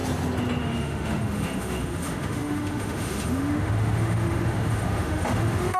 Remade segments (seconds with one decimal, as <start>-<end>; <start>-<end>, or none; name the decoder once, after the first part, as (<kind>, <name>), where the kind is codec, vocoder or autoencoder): 0.6-5.8 (autoencoder, DAC-VAE)

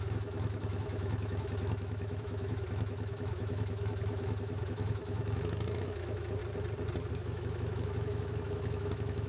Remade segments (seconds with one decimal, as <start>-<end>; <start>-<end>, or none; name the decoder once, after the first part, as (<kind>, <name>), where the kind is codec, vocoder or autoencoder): 0.0-6.4 (autoencoder, DAC-VAE); 7.1-9.3

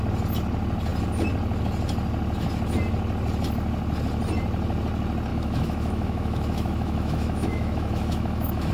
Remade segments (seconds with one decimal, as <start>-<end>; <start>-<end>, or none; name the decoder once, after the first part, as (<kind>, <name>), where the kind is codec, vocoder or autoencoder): 5.3-8.7 (autoencoder, DAC-VAE)

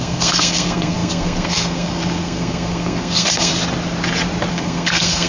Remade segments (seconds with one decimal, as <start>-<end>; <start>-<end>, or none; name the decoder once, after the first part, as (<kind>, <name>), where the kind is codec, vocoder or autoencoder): 0.0-3.5 (codec, SNAC); 4.5-5.3

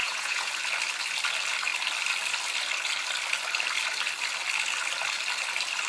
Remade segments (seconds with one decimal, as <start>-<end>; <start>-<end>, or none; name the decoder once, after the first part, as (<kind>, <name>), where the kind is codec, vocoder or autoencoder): 0.0-0.5 (vocoder, Vocos)

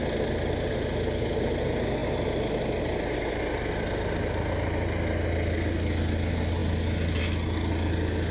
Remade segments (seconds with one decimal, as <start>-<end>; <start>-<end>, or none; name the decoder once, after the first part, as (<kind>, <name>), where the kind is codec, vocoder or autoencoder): none